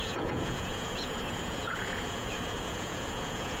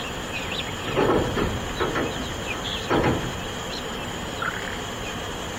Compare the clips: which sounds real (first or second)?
second